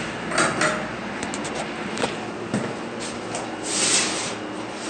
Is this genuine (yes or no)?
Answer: yes